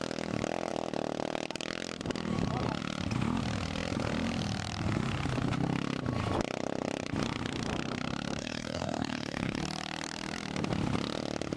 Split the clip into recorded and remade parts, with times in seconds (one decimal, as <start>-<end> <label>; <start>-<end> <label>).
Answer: 0.0-8.4 recorded; 8.4-9.6 remade; 9.6-11.6 recorded